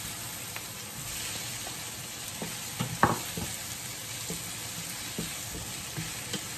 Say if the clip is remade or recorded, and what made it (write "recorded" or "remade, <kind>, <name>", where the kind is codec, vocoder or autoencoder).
recorded